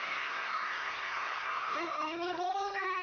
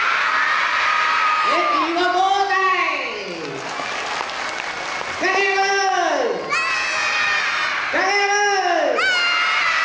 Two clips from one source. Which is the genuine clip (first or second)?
second